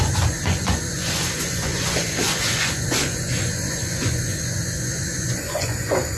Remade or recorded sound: remade